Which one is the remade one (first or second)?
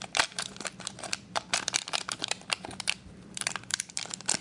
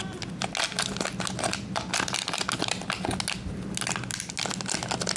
first